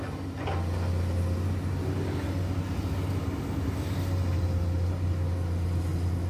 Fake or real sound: real